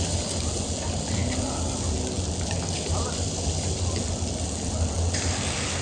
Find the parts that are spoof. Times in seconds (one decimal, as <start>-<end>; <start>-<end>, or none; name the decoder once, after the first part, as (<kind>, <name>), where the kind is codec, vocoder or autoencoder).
none